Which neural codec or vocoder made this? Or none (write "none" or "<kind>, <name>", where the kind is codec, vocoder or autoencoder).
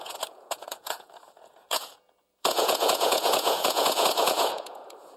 vocoder, Vocos